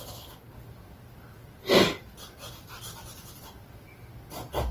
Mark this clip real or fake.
real